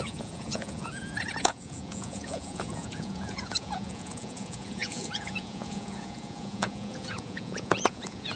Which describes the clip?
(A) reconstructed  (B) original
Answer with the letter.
A